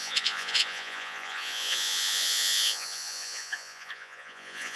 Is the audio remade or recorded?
remade